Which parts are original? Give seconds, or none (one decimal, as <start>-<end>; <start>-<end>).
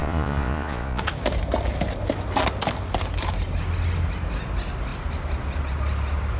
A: 1.0-6.4